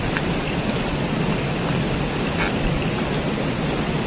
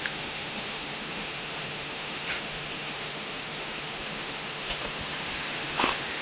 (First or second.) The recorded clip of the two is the first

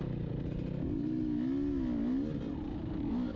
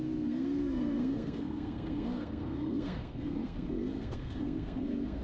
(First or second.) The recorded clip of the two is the first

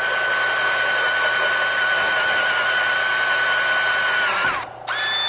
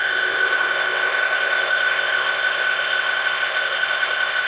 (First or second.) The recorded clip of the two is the first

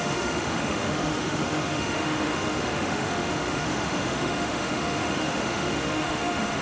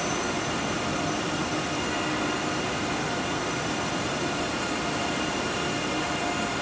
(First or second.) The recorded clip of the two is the second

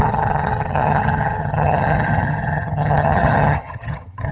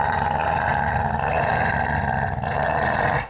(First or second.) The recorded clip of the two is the second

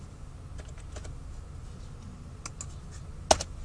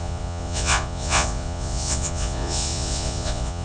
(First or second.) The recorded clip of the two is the first